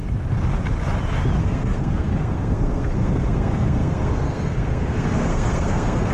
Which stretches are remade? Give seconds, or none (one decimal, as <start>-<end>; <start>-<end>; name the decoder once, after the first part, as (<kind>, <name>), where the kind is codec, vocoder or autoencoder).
1.4-6.1 (codec, SNAC)